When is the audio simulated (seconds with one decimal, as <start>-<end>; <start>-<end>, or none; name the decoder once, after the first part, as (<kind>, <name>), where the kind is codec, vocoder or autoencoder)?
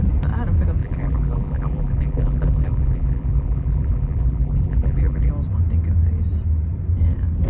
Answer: 0.8-5.3 (vocoder, BigVGAN v2)